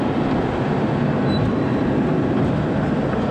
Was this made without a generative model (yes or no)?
yes